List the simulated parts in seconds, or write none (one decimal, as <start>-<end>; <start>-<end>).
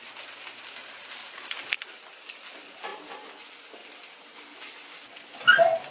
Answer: none